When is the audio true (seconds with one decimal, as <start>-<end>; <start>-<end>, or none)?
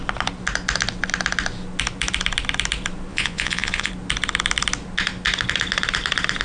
0.0-3.1; 3.9-6.4